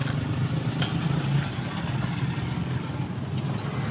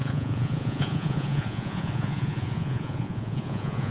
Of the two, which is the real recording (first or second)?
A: first